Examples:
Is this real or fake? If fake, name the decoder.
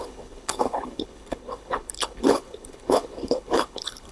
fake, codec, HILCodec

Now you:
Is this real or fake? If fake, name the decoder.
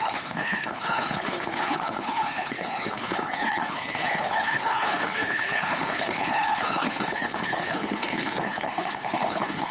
fake, codec, HILCodec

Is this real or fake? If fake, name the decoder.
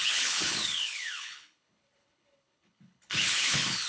fake, codec, HILCodec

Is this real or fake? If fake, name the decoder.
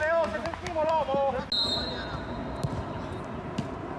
real